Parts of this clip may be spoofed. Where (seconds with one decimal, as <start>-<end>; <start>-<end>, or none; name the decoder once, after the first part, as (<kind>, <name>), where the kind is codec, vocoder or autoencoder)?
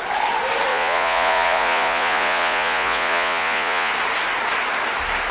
0.7-3.9 (vocoder, Vocos)